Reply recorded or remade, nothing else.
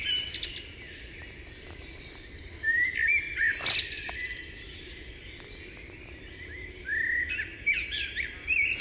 remade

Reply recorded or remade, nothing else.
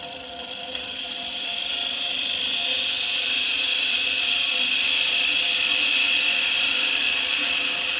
remade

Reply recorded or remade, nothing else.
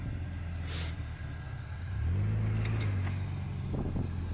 recorded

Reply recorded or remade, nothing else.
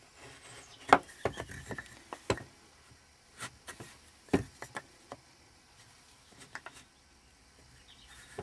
recorded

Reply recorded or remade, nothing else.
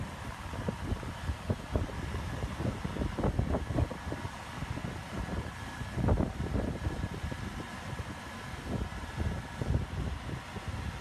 recorded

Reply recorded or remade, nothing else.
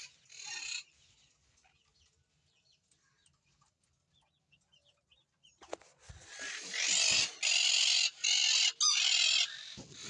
recorded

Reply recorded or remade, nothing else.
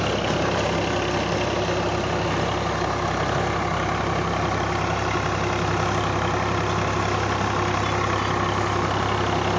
recorded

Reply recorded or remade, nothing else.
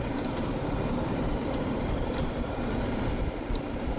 remade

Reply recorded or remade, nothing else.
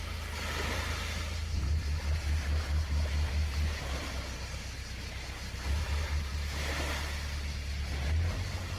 recorded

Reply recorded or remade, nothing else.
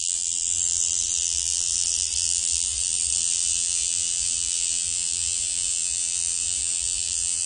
remade